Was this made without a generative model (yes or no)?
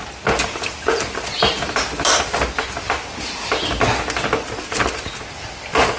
yes